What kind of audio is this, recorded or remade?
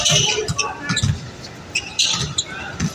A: recorded